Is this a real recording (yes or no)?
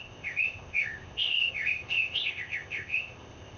no